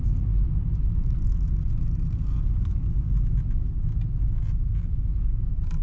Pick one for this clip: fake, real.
real